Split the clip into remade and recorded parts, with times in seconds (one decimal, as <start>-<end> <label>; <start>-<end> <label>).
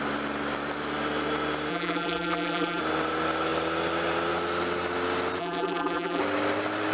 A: 0.0-1.7 recorded; 1.7-2.8 remade; 2.8-5.4 recorded; 5.4-6.2 remade; 6.2-6.9 recorded